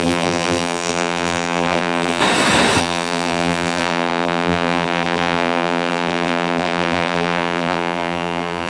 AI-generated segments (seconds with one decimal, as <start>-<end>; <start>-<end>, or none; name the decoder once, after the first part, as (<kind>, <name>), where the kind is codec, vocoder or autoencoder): 0.0-2.2 (vocoder, BigVGAN v2); 2.8-8.7

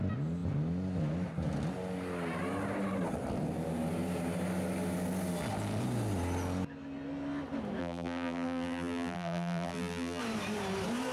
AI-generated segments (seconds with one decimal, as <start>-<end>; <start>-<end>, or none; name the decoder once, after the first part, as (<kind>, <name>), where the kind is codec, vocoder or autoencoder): 7.8-10.2 (vocoder, BigVGAN v2)